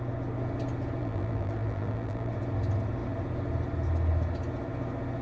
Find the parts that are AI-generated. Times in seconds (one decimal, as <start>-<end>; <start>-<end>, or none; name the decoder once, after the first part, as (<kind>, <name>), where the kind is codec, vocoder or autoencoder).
1.0-2.3 (vocoder, BigVGAN v2)